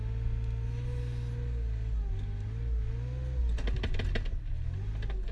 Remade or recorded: recorded